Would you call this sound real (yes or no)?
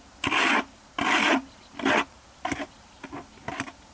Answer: yes